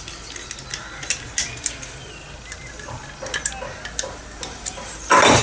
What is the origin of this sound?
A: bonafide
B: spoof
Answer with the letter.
A